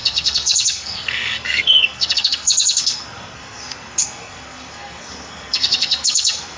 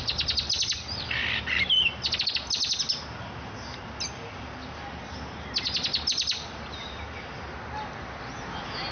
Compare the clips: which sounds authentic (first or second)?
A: second